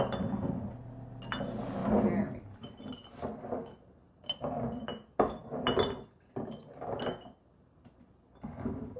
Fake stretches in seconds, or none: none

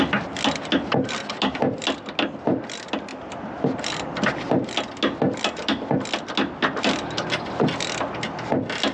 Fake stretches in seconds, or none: 3.1-4.1 (vocoder, BigVGAN v2)